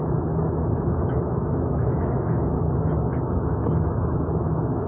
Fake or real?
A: fake